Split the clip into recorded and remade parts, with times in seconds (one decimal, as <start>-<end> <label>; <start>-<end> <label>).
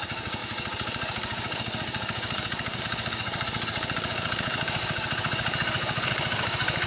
0.0-6.9 remade